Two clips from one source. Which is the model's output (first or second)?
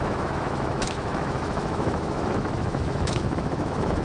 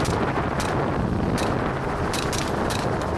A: first